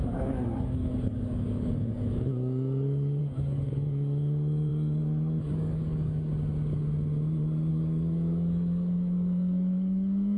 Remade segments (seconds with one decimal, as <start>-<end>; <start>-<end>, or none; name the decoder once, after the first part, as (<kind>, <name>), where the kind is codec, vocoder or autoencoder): 0.0-6.3 (codec, DAC); 7.7-10.4